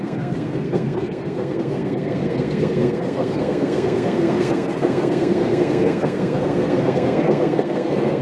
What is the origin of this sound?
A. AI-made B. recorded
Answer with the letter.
A